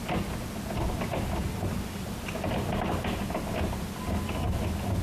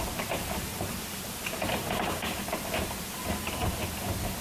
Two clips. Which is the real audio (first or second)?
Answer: first